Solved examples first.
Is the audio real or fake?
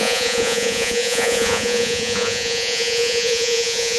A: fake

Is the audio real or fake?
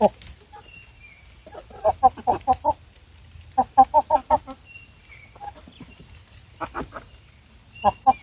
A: real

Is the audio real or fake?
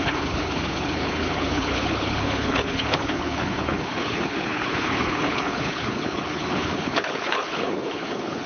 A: fake